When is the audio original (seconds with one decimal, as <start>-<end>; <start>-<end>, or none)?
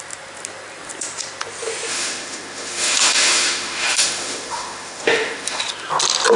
0.0-1.9; 5.6-6.4